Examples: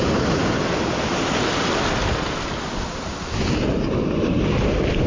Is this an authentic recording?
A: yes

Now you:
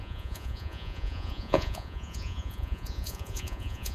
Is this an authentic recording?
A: no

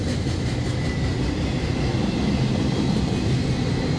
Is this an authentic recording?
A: yes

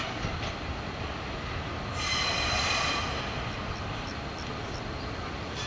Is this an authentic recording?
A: yes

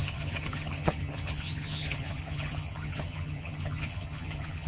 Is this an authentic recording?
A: no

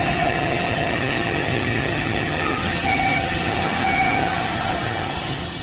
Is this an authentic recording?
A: no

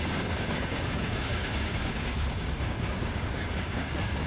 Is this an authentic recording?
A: no